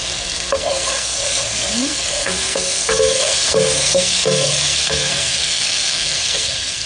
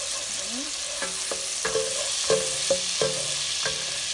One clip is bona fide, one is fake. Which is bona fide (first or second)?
second